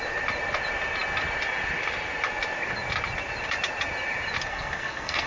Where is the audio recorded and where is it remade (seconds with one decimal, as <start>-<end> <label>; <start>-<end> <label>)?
0.0-4.5 recorded; 4.5-5.3 remade

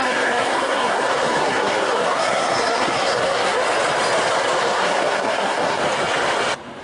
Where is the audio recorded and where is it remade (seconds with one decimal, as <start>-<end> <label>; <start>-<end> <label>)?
0.0-3.6 remade; 3.6-4.6 recorded; 4.6-5.8 remade; 5.8-6.8 recorded